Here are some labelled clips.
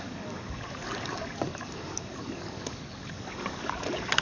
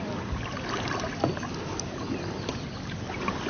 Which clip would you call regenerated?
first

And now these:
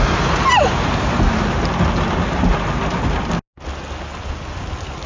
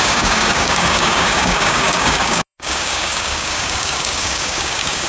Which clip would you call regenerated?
second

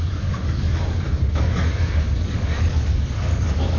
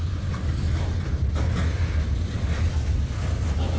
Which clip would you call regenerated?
first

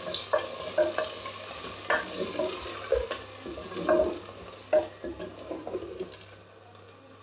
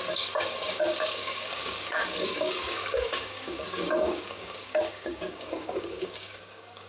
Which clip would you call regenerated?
second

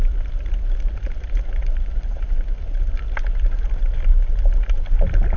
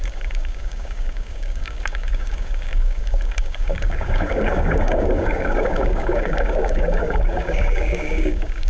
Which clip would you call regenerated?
second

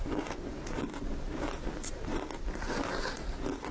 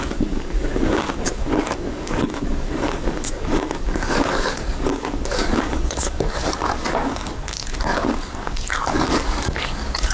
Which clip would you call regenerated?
second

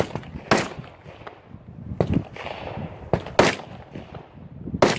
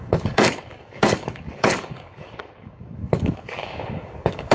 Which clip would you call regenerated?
second